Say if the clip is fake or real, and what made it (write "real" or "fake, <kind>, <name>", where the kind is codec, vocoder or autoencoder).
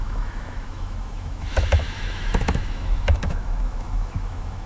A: fake, autoencoder, DAC-VAE